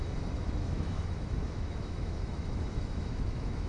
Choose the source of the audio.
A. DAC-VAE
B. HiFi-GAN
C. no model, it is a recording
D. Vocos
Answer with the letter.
A